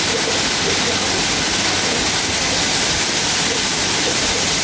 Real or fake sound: real